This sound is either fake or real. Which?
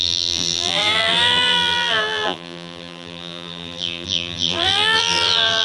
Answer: fake